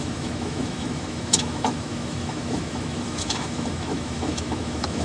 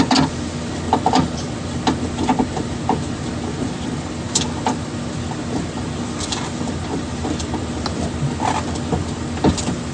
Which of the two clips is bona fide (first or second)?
second